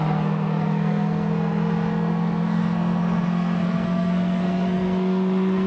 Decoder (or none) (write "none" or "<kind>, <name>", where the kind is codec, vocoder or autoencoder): codec, SNAC